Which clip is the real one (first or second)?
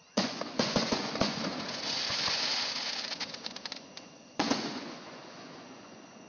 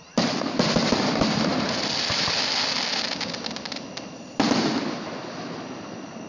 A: second